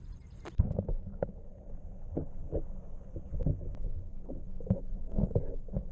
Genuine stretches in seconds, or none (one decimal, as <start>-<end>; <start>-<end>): 0.0-3.9; 4.5-4.9; 5.4-5.9